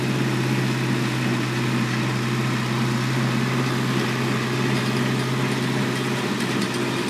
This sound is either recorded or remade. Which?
recorded